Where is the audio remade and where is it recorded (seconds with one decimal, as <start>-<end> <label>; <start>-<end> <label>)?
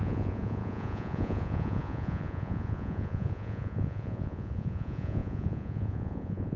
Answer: 0.0-6.6 remade